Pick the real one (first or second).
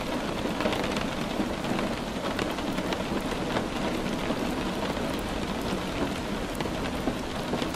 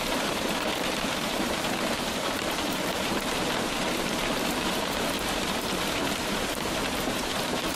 first